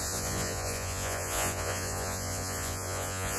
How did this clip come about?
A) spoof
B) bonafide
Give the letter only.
A